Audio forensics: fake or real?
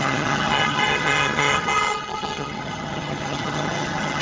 fake